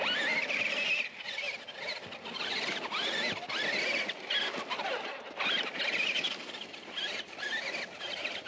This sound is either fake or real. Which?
real